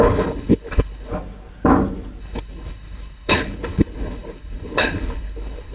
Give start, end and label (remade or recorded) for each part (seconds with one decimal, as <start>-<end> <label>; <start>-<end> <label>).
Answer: 0.0-1.1 remade; 1.1-2.2 recorded; 2.2-5.7 remade